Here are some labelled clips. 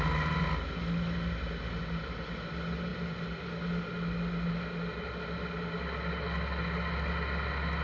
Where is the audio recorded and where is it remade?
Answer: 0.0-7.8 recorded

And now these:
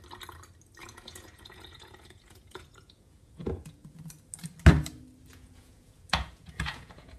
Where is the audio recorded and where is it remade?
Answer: 0.0-0.8 recorded; 0.8-4.0 remade; 4.0-5.3 recorded; 5.3-7.2 remade

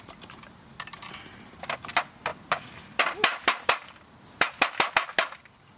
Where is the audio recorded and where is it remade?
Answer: 0.0-2.3 recorded; 2.3-4.9 remade; 4.9-5.8 recorded

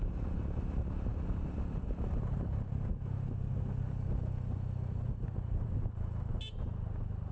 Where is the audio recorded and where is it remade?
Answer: 0.0-7.3 recorded

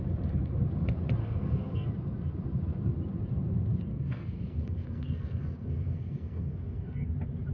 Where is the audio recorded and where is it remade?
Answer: 0.0-1.2 recorded; 1.2-1.9 remade; 1.9-3.9 recorded; 3.9-7.1 remade; 7.1-7.5 recorded

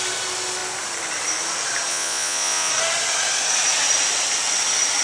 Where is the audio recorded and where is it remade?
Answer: 0.0-1.9 recorded; 1.9-2.7 remade; 2.7-5.0 recorded

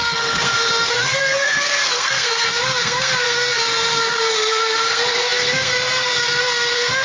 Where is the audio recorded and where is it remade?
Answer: 0.0-7.0 remade

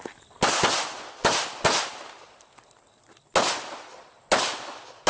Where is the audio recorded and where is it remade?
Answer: 0.0-5.1 recorded